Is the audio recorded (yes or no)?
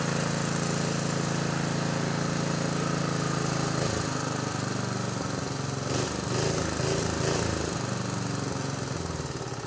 yes